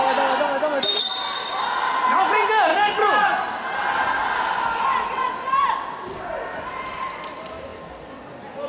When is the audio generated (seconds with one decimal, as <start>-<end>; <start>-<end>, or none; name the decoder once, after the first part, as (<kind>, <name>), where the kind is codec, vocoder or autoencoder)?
none